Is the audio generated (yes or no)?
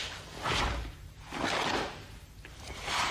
yes